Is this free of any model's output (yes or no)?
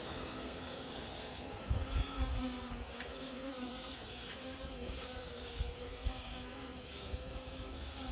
no